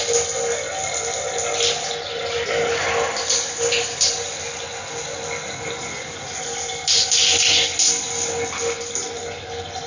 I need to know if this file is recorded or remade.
recorded